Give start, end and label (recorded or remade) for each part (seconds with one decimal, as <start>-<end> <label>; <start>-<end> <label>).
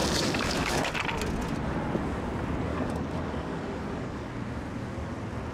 0.0-0.9 remade; 0.9-2.7 recorded; 2.7-4.3 remade; 4.3-5.5 recorded